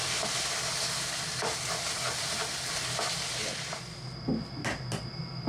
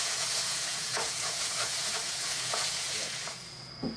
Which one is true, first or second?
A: first